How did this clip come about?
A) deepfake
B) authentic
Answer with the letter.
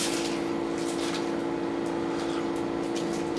B